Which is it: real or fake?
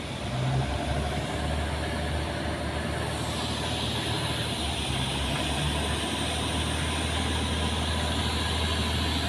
real